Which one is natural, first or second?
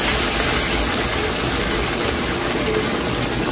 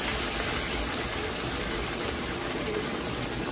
first